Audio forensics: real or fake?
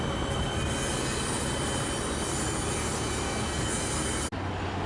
real